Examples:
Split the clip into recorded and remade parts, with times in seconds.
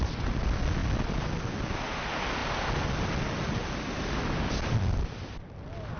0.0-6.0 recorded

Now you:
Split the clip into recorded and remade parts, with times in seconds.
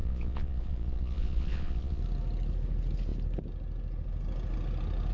0.0-2.0 remade; 2.0-5.1 recorded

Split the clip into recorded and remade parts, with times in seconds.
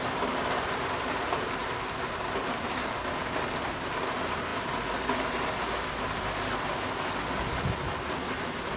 0.0-8.8 recorded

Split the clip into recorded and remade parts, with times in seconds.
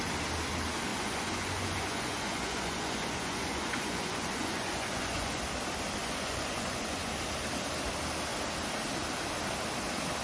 0.0-0.9 recorded; 0.9-5.4 remade; 5.4-6.0 recorded; 6.0-7.1 remade; 7.1-10.2 recorded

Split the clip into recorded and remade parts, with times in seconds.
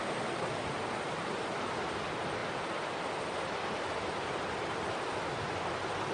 0.0-6.1 recorded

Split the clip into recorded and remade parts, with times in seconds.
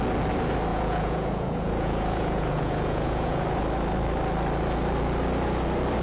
0.0-0.7 recorded; 0.7-3.6 remade; 3.6-6.0 recorded